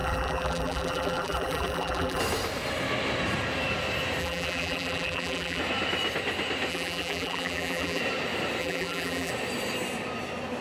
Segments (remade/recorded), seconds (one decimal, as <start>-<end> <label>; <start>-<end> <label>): 0.0-2.2 remade; 2.2-4.2 recorded; 4.2-5.6 remade; 5.6-6.7 recorded; 6.7-8.0 remade; 8.0-8.6 recorded; 8.6-9.3 remade; 9.3-10.6 recorded